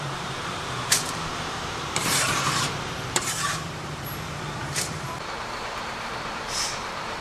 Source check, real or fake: fake